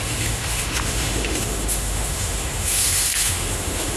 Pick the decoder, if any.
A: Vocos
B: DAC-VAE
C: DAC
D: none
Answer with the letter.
B